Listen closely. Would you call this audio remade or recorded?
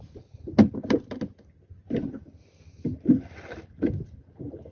recorded